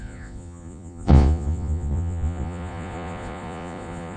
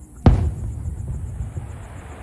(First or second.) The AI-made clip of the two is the first